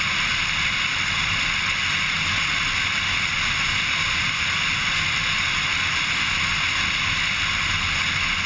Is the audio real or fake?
real